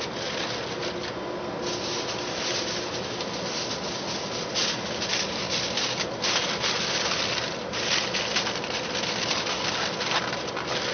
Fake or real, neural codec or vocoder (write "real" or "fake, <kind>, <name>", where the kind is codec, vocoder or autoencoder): real